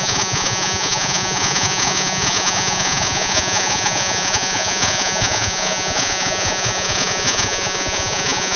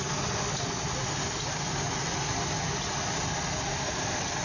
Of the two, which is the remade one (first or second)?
first